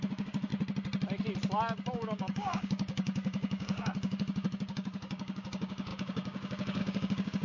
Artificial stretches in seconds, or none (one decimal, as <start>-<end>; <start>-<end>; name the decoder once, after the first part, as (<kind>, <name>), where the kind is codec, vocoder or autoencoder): 0.0-0.5 (codec, DAC); 1.9-7.4